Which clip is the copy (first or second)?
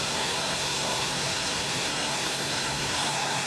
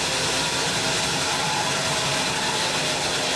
first